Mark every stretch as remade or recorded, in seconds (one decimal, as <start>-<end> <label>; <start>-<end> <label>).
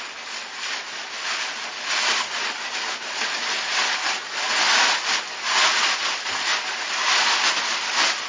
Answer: 0.0-8.3 recorded